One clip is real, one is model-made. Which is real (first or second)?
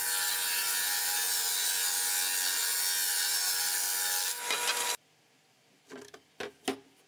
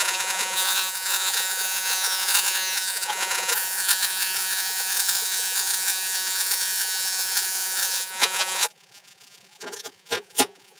first